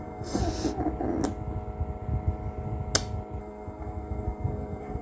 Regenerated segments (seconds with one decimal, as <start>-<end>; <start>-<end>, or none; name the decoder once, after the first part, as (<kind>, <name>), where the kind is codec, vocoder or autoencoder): 0.0-0.4 (codec, SNAC); 3.4-5.0